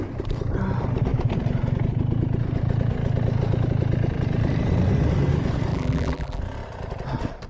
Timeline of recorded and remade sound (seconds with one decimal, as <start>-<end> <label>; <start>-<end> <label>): 0.0-5.7 recorded; 5.7-6.4 remade; 6.4-7.5 recorded